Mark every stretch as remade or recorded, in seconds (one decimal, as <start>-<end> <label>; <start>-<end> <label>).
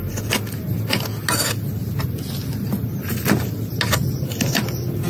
0.0-5.1 recorded